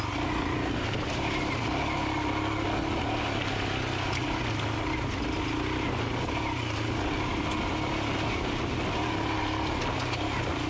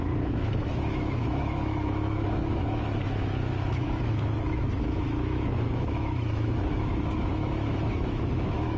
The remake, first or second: second